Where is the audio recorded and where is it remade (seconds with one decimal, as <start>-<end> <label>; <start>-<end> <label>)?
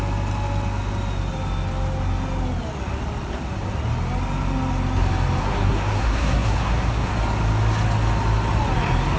0.0-5.4 recorded; 5.4-7.1 remade; 7.1-9.2 recorded